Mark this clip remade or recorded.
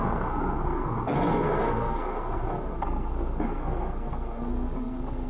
remade